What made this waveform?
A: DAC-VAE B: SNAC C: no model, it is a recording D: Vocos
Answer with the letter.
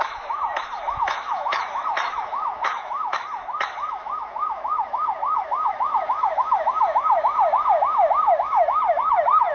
A